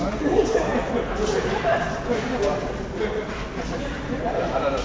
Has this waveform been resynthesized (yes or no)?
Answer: no